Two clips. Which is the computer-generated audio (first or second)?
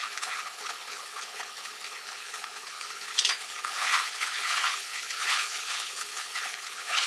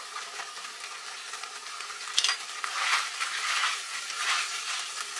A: first